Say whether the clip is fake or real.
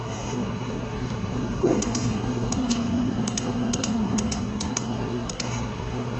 fake